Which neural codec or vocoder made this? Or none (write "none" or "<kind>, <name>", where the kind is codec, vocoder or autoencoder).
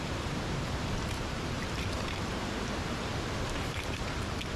vocoder, BigVGAN v2